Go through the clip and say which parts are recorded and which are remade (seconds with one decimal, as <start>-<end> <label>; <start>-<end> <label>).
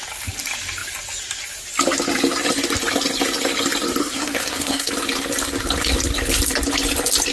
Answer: 0.0-4.0 recorded; 4.0-4.9 remade; 4.9-7.3 recorded